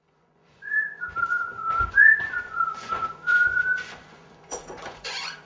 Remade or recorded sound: remade